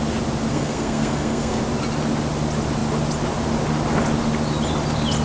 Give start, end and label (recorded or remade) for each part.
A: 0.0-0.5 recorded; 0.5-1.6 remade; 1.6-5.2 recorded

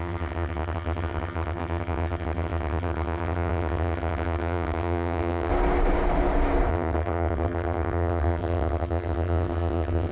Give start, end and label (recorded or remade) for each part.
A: 0.0-5.5 remade; 5.5-6.7 recorded; 6.7-10.1 remade

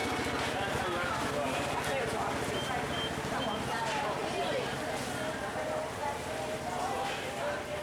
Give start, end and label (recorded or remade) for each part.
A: 0.0-7.8 recorded

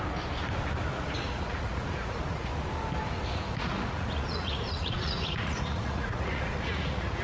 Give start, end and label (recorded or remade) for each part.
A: 0.0-0.9 recorded; 0.9-2.5 remade; 2.5-3.5 recorded; 3.5-7.2 remade

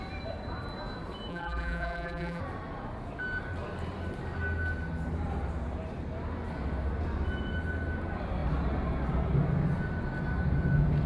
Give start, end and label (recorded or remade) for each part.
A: 0.0-1.3 recorded; 1.3-2.4 remade; 2.4-11.1 recorded

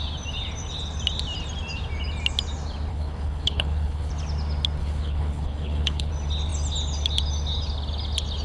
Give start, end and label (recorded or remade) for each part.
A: 0.0-2.9 recorded; 2.9-4.1 remade; 4.1-4.8 recorded; 4.8-6.1 remade; 6.1-8.4 recorded